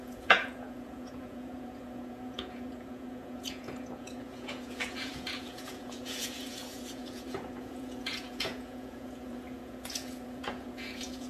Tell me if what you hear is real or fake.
fake